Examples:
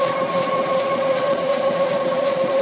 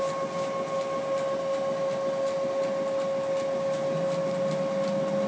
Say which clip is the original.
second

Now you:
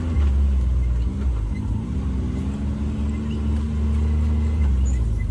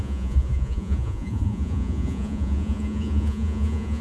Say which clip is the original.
first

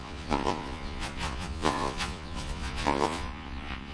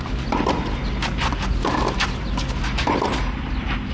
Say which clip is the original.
second